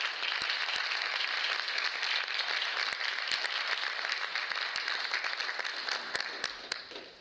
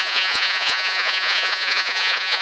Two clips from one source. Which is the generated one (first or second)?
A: second